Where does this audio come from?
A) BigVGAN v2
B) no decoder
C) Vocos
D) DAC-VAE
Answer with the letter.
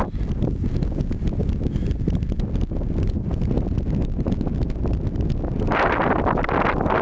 B